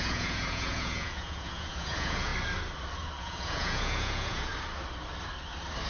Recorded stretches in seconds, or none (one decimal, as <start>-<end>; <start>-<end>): 2.3-3.2; 4.5-5.9

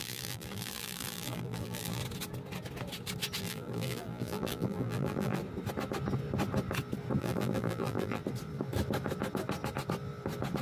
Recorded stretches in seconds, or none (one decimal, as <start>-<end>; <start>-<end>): 2.0-3.4; 5.4-7.2; 8.2-10.6

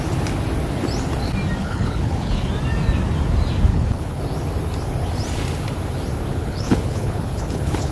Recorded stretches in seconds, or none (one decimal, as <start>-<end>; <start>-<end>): 0.0-1.6; 2.5-3.7; 4.2-6.3

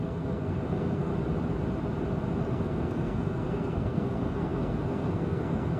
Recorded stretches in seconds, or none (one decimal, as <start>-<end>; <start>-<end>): 1.1-2.4

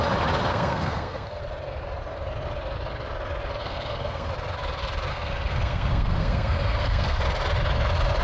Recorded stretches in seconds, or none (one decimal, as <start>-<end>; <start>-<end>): 0.0-0.5; 1.4-3.6; 4.3-5.1; 7.2-8.2

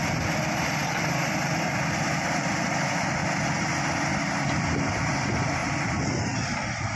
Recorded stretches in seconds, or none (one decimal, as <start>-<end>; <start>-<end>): 3.2-4.9

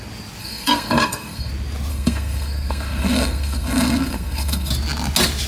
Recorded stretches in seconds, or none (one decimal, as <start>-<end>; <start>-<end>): 0.0-0.4; 1.5-1.9; 4.7-5.5

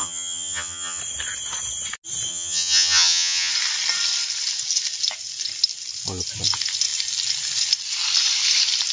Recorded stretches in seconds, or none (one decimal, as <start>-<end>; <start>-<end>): 1.0-2.3; 3.5-8.9